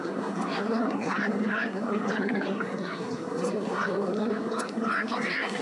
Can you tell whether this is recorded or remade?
remade